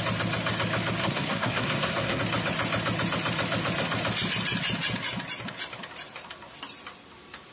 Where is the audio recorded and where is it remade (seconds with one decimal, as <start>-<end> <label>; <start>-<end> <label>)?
0.0-1.0 recorded; 1.0-2.2 remade; 2.2-7.5 recorded